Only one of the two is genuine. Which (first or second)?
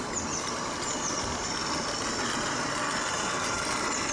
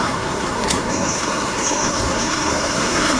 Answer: first